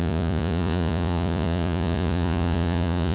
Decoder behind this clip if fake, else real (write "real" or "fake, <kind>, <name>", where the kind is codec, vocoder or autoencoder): fake, vocoder, Vocos